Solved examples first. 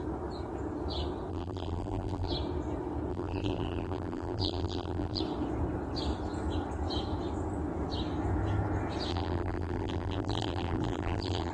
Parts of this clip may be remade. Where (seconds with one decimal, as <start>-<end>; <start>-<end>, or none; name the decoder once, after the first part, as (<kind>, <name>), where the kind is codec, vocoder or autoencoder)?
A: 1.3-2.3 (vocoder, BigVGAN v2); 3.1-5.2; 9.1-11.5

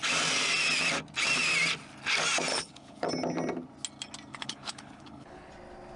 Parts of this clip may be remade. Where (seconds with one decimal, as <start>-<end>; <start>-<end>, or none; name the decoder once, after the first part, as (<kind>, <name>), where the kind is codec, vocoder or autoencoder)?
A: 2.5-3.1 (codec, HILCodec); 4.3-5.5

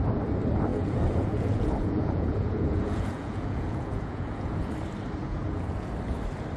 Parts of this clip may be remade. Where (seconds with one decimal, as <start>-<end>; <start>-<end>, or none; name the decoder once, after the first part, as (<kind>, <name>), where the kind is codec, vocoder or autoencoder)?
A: 0.7-4.7 (vocoder, Vocos); 5.2-5.9